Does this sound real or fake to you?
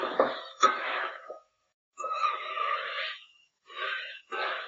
fake